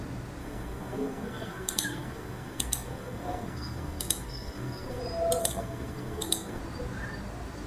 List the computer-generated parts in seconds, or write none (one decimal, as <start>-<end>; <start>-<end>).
0.4-5.0; 5.4-6.6